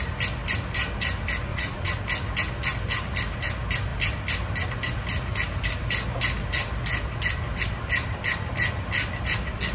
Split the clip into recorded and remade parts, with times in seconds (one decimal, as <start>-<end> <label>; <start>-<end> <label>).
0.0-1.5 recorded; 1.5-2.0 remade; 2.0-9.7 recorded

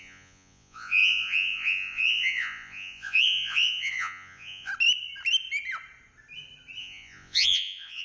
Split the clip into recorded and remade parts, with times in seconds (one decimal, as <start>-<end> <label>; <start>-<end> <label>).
0.0-4.7 remade; 4.7-6.8 recorded; 6.8-8.0 remade

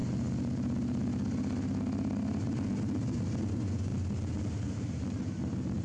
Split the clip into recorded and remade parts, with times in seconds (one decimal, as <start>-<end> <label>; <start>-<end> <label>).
0.0-3.5 recorded; 3.5-3.9 remade; 3.9-5.8 recorded

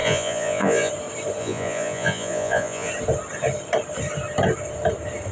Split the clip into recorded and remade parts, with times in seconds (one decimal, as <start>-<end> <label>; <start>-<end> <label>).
0.0-0.9 remade; 0.9-1.4 recorded; 1.4-2.9 remade; 2.9-5.3 recorded